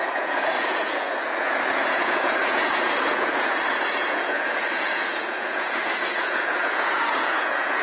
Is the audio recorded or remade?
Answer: remade